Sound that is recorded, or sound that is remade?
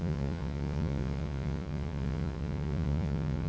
remade